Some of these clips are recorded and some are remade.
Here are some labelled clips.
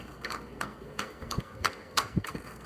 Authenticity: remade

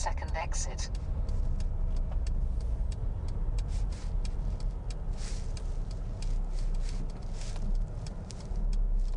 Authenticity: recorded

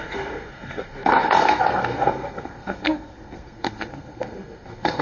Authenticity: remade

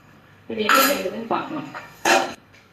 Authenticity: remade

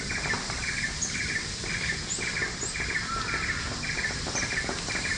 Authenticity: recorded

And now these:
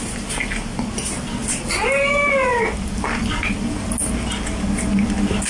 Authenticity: recorded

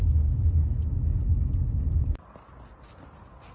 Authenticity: recorded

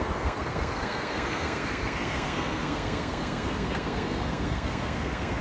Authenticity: remade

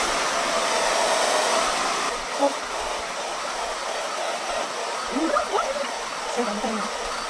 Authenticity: recorded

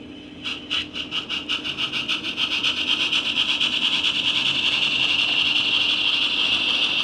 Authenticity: recorded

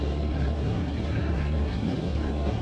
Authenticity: remade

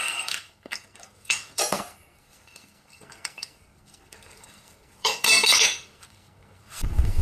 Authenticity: remade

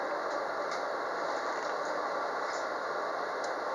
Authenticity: recorded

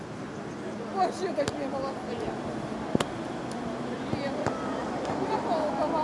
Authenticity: recorded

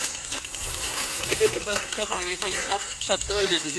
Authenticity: remade